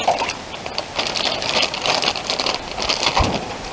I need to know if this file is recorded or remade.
remade